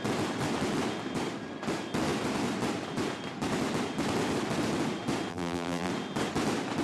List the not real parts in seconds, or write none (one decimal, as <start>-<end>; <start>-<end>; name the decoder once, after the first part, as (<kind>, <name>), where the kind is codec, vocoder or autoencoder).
5.3-5.9 (vocoder, BigVGAN v2)